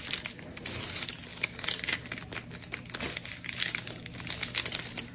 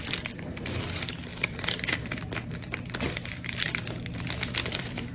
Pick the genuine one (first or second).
first